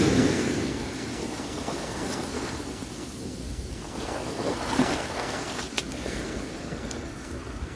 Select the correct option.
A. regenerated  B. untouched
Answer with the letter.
A